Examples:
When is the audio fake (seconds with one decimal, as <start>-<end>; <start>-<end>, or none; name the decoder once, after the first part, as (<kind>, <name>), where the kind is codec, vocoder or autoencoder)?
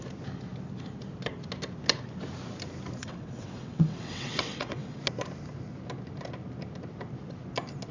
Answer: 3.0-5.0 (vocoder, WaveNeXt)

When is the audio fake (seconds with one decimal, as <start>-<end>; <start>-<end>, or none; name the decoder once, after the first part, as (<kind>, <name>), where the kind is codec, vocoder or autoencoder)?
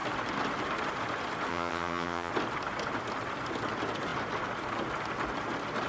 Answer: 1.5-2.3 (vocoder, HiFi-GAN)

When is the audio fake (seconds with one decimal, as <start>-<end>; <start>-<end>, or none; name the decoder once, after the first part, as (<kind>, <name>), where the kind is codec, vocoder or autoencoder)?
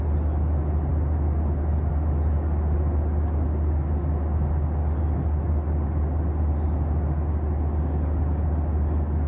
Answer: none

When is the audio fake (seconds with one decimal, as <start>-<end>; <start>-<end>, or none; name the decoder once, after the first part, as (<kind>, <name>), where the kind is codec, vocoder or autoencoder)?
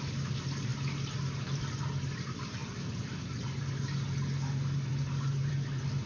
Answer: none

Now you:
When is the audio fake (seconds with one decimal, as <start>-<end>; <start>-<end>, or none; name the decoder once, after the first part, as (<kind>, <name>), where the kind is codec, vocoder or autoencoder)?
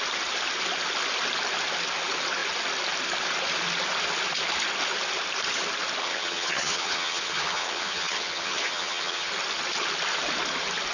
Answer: 6.0-9.3 (vocoder, HiFi-GAN)